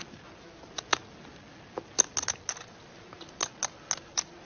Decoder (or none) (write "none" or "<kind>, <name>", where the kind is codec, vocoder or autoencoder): none